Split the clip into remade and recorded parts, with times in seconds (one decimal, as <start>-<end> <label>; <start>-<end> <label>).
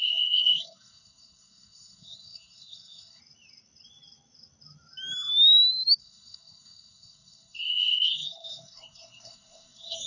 0.0-3.2 remade; 3.2-6.0 recorded; 6.0-10.1 remade